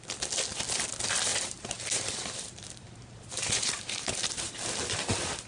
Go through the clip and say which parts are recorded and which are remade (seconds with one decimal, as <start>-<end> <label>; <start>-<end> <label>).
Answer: 0.0-1.3 recorded; 1.3-4.6 remade; 4.6-5.5 recorded